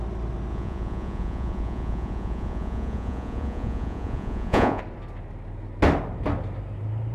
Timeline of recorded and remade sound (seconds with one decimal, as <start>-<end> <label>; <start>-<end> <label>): 0.0-0.5 recorded; 0.5-4.8 remade; 4.8-7.1 recorded